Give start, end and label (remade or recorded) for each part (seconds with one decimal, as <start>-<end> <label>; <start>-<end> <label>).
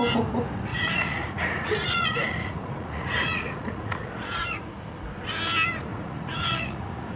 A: 0.0-0.7 recorded; 0.7-4.8 remade; 4.8-5.9 recorded; 5.9-7.2 remade